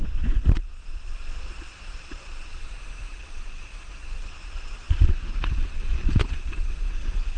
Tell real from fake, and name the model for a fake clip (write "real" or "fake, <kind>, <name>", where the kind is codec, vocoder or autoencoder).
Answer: fake, vocoder, Vocos